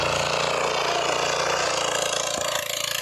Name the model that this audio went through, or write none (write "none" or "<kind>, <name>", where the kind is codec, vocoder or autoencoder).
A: none